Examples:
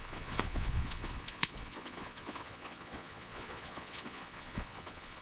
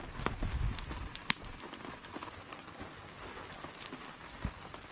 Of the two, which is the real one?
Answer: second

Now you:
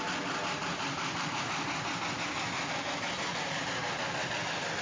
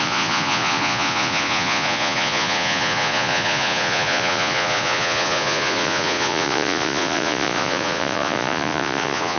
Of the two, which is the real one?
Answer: first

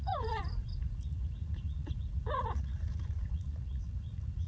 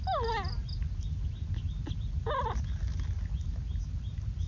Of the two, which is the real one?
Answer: second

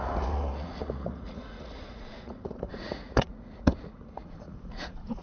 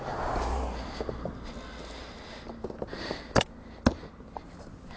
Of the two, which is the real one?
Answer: second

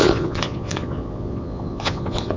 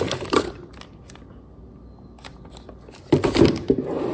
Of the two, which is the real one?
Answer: second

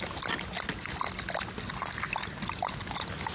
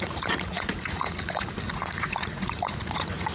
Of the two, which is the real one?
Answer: first